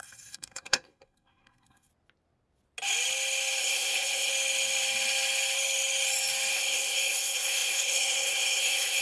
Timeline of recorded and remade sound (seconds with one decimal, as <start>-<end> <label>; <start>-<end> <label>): 0.0-1.9 remade; 1.9-3.6 recorded; 3.6-4.3 remade; 4.3-6.5 recorded; 6.5-9.0 remade